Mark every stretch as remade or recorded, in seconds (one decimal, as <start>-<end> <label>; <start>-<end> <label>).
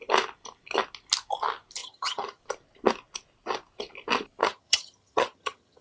0.0-1.8 recorded; 1.8-2.4 remade; 2.4-4.4 recorded; 4.4-5.8 remade